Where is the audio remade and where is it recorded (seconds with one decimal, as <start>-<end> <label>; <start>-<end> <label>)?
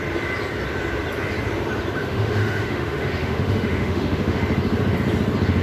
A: 0.0-2.0 recorded; 2.0-4.4 remade; 4.4-5.6 recorded